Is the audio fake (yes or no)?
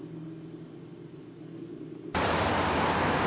no